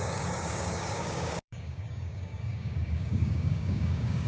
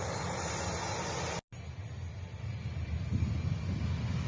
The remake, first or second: first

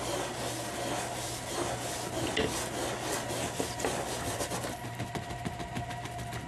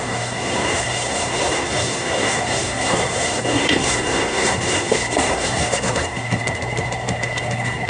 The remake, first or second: second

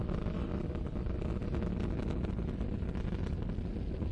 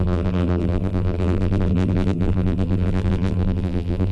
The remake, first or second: second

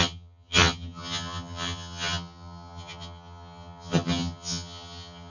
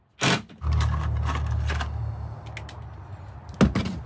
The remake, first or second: first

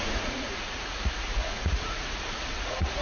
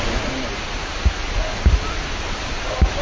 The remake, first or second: first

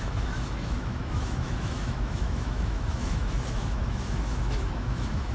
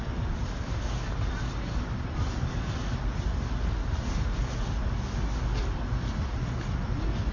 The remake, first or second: first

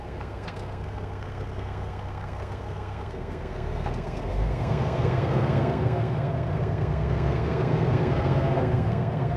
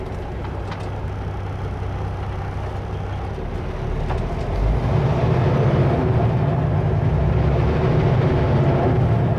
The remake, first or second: first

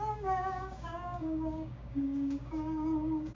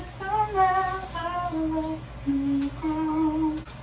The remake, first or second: first